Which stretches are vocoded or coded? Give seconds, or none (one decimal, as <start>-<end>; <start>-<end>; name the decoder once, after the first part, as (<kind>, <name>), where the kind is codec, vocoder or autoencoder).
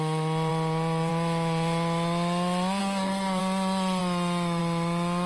2.8-3.4 (codec, DAC)